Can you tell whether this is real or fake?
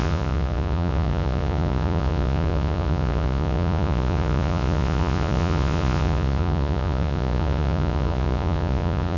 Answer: fake